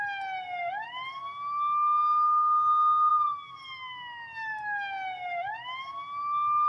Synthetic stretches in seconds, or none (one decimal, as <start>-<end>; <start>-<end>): none